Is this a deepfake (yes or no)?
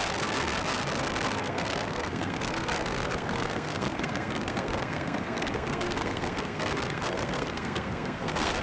yes